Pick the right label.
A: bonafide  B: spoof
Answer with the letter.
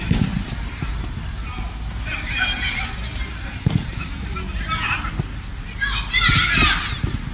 B